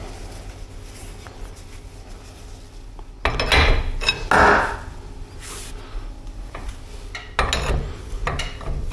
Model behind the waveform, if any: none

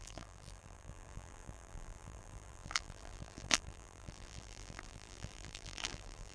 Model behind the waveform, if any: vocoder, BigVGAN v2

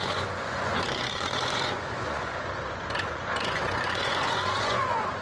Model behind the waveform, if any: vocoder, Vocos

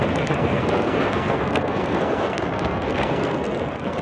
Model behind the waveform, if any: codec, SNAC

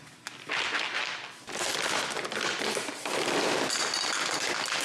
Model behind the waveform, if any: none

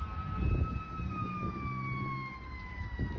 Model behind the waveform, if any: none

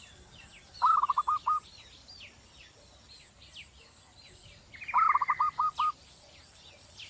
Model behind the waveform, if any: none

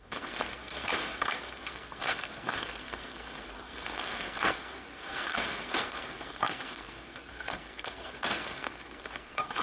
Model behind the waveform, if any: codec, SNAC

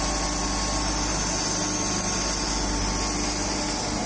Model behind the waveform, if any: none